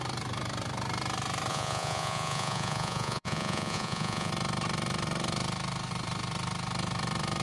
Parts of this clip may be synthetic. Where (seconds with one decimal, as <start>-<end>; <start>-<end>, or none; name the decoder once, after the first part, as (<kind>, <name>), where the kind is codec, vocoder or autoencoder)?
1.5-4.3 (vocoder, Vocos)